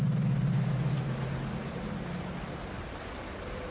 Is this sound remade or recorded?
recorded